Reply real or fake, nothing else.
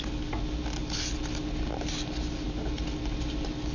real